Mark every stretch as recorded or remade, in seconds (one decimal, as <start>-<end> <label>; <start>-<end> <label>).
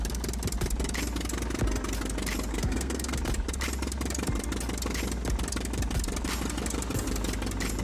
0.0-2.5 recorded; 2.5-3.2 remade; 3.2-7.8 recorded